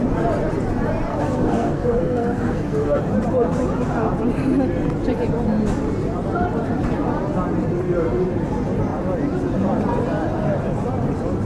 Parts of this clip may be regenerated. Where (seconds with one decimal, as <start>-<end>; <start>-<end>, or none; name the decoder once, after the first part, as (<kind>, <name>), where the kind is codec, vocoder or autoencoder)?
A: 1.1-3.0 (codec, SNAC)